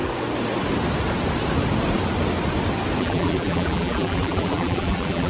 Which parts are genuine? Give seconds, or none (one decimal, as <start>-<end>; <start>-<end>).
0.0-3.0

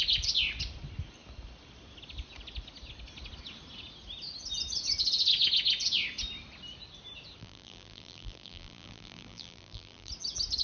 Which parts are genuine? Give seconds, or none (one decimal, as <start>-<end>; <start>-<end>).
0.0-7.4; 10.1-10.6